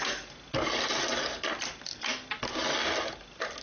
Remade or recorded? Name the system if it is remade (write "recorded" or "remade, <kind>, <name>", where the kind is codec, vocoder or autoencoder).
recorded